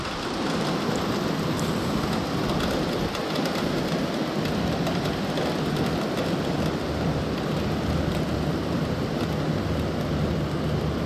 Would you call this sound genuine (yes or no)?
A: yes